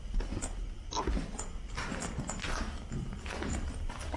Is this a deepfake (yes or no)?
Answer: no